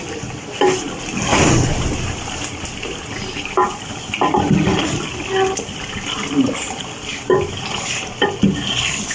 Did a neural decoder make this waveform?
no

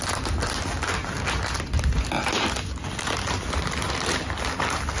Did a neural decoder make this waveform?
no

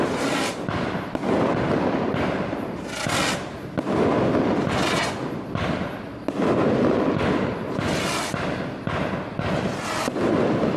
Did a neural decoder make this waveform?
no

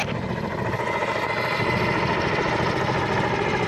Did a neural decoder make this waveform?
no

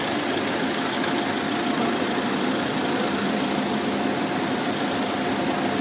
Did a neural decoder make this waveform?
no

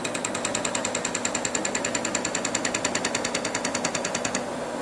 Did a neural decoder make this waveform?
no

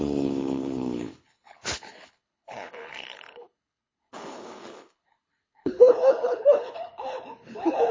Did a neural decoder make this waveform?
yes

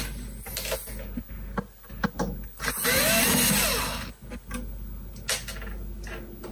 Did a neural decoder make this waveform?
no